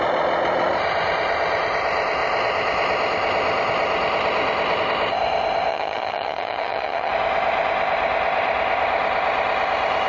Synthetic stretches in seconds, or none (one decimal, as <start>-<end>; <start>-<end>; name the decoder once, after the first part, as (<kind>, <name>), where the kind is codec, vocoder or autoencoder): 5.7-7.1 (vocoder, HiFi-GAN)